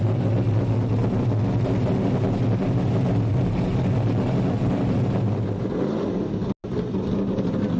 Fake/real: real